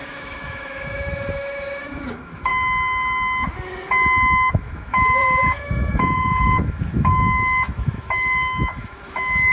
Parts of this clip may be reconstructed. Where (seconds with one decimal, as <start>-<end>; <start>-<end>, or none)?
0.0-2.5; 4.5-9.5